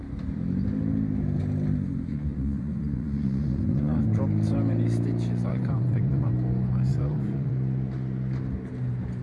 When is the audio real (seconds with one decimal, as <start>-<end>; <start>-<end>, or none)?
0.0-2.1; 4.2-5.5; 6.3-6.9; 7.5-9.2